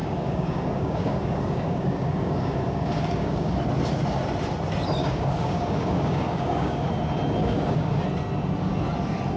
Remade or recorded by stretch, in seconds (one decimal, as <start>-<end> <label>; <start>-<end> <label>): 0.0-3.6 remade; 3.6-5.0 recorded; 5.0-6.9 remade; 6.9-7.4 recorded; 7.4-8.0 remade; 8.0-9.4 recorded

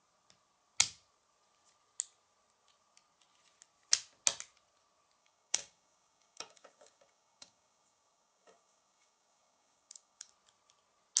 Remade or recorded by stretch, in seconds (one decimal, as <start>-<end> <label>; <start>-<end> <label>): 0.0-5.2 recorded; 5.2-10.3 remade; 10.3-11.2 recorded

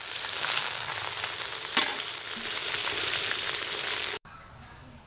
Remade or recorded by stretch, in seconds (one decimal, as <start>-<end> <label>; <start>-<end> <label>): 0.0-0.9 remade; 0.9-4.0 recorded; 4.0-5.1 remade